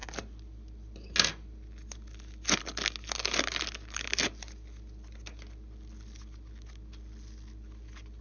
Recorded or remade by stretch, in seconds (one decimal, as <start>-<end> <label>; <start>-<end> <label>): 0.0-8.2 recorded